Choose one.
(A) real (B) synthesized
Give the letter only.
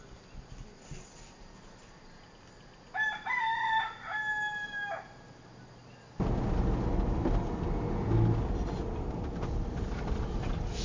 A